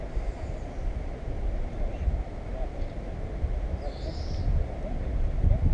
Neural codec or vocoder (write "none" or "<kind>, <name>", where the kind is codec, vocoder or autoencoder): none